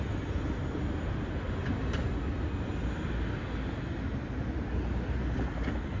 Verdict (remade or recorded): recorded